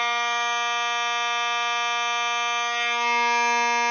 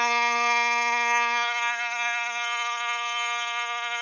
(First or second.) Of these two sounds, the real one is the first